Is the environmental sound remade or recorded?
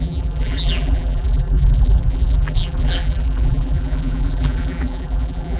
remade